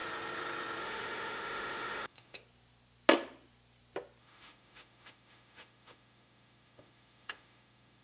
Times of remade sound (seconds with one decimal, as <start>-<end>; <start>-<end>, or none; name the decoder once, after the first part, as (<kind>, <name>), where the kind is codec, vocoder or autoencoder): 0.8-2.4 (autoencoder, DAC-VAE); 4.2-8.0